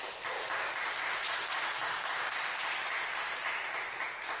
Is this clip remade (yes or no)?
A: no